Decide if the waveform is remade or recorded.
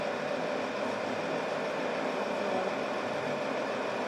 recorded